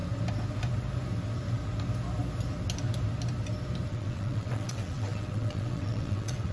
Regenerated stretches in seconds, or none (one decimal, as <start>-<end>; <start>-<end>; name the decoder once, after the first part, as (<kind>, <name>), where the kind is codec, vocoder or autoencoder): 3.9-6.5 (vocoder, WaveNeXt)